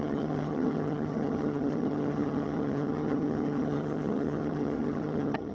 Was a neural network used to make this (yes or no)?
yes